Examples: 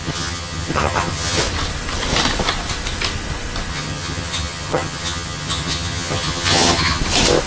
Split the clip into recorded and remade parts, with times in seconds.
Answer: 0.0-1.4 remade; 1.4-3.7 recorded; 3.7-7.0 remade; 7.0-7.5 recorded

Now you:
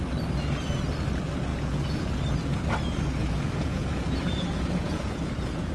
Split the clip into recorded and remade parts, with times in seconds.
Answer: 0.0-1.5 recorded; 1.5-2.1 remade; 2.1-3.2 recorded; 3.2-5.7 remade

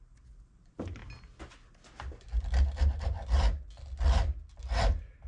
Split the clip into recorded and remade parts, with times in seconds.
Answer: 0.0-5.3 recorded

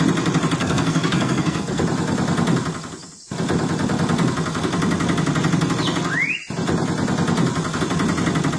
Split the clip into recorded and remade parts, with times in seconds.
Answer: 0.0-0.6 recorded; 0.6-1.8 remade; 1.8-8.6 recorded

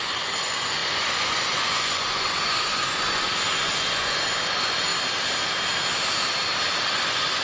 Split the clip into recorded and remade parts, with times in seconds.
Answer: 0.0-4.9 remade; 4.9-6.8 recorded; 6.8-7.4 remade

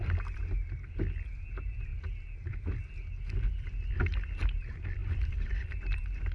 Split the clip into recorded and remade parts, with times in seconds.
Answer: 0.0-6.3 recorded